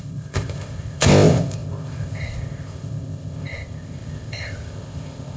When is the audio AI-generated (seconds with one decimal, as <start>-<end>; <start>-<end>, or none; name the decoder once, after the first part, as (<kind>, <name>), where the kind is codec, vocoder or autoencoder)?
0.0-5.4 (codec, ZipCodec)